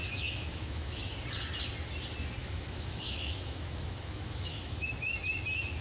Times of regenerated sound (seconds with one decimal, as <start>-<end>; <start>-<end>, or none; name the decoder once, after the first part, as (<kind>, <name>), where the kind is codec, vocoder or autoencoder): 0.0-1.0 (autoencoder, DAC-VAE); 2.4-4.9